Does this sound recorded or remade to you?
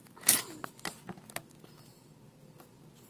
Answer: recorded